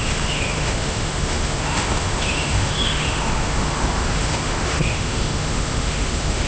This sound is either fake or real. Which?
fake